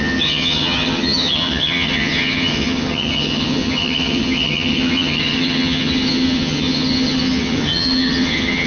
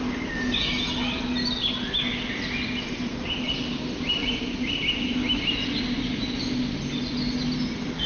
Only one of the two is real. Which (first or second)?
second